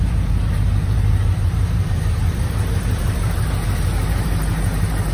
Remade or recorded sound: remade